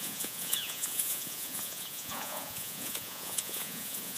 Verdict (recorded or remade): remade